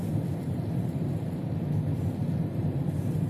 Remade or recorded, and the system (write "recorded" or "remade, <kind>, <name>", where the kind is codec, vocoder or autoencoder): recorded